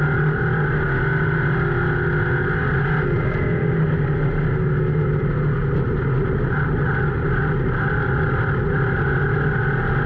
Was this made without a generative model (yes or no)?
yes